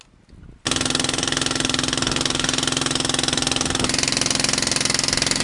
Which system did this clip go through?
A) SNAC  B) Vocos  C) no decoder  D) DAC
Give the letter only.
C